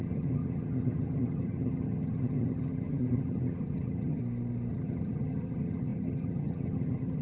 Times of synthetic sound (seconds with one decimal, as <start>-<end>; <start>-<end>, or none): 0.0-4.2; 4.7-7.2